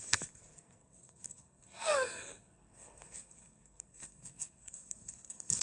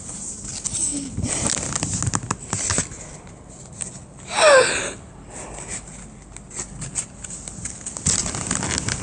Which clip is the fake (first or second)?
first